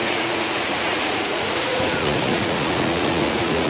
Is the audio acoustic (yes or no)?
no